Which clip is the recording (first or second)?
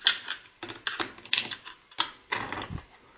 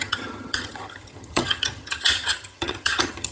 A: first